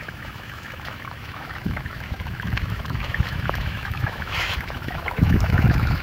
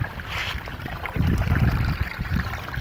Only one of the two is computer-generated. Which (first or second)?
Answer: first